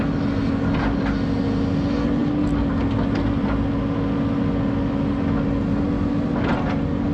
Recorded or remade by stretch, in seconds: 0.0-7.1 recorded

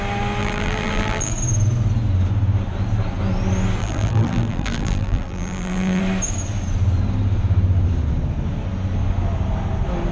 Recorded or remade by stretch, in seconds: 0.0-0.4 recorded; 0.4-1.3 remade; 1.3-3.8 recorded; 3.8-6.0 remade; 6.0-10.1 recorded

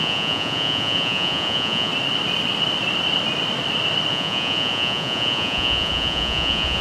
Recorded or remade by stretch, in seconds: 0.0-1.9 remade; 1.9-4.1 recorded; 4.1-6.8 remade

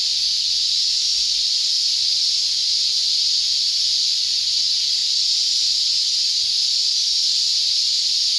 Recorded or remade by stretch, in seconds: 0.0-8.4 recorded

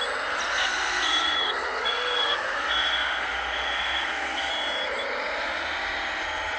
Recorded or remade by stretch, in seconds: 0.0-0.5 recorded; 0.5-4.5 remade; 4.5-6.6 recorded

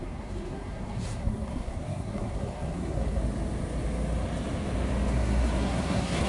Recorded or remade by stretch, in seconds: 0.0-3.2 remade; 3.2-5.1 recorded; 5.1-6.3 remade